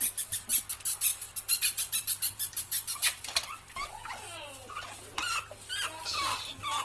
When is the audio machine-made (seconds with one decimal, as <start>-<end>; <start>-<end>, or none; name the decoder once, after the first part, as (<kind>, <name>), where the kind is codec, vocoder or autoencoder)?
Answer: 1.1-3.9 (vocoder, BigVGAN v2)